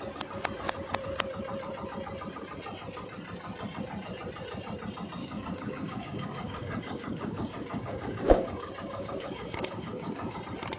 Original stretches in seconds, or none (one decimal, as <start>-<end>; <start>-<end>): 0.0-5.2; 10.4-10.8